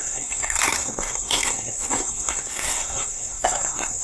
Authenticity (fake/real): fake